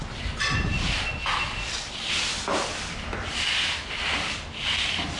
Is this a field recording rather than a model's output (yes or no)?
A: yes